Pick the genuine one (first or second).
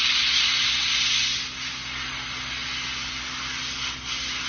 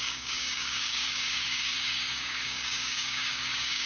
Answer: first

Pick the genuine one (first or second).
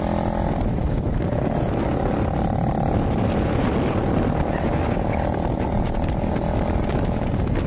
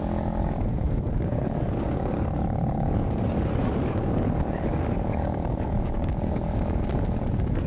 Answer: first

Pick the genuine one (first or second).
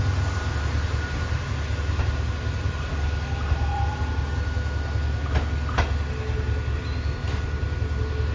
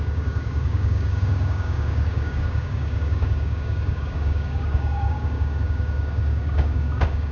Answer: first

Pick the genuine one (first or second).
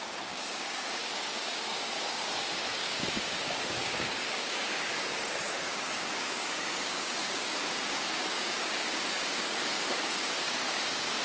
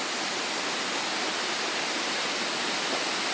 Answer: second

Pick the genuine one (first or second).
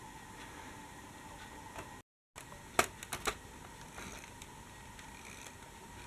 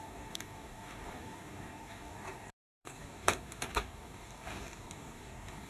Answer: first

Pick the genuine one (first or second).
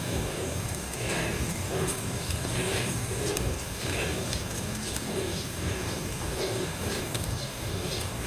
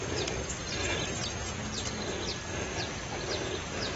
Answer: second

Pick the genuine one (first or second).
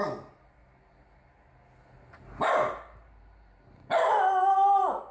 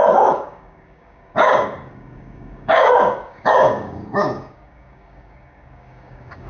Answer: first